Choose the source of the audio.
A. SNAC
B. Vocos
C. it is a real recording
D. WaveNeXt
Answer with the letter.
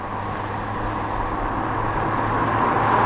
C